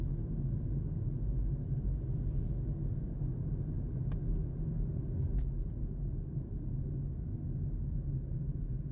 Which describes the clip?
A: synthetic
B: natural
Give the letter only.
B